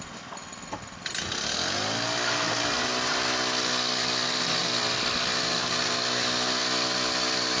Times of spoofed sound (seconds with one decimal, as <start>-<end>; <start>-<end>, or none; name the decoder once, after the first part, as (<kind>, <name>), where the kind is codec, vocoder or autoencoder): none